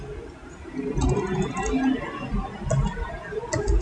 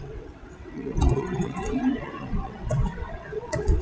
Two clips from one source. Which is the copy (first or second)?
second